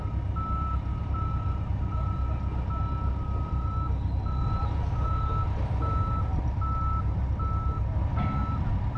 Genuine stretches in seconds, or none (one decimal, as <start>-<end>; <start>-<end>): 0.0-9.0